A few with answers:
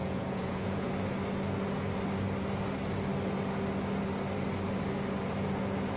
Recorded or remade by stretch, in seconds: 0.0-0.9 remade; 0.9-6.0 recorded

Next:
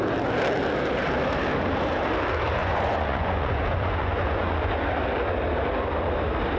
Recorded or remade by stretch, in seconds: 0.0-2.6 recorded; 2.6-4.7 remade; 4.7-6.6 recorded

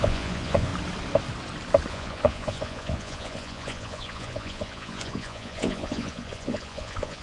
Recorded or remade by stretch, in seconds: 0.0-0.7 remade; 0.7-1.9 recorded; 1.9-7.2 remade

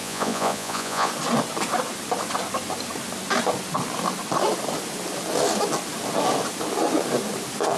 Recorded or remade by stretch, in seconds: 0.0-1.1 remade; 1.1-7.8 recorded